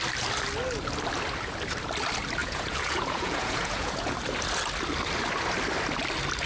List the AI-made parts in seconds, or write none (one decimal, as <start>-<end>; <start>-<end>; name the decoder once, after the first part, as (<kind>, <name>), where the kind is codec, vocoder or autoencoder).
2.4-4.1 (vocoder, Vocos)